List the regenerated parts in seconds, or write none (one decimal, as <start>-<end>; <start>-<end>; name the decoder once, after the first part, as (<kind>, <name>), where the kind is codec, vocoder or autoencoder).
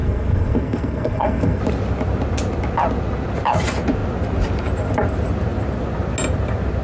0.0-1.6 (codec, SNAC)